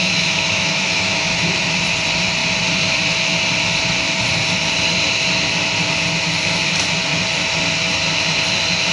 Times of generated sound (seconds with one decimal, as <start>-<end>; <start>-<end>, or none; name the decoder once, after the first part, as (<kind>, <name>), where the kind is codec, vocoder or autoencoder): 0.0-1.8 (autoencoder, DAC-VAE)